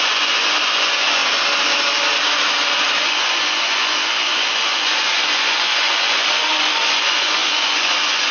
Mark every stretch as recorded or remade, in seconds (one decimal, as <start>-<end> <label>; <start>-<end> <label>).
0.0-1.2 remade; 1.2-2.9 recorded; 2.9-8.3 remade